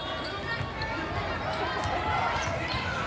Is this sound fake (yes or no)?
no